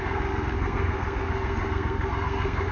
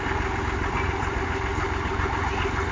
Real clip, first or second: second